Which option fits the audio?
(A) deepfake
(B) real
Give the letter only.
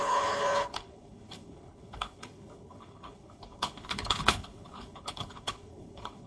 A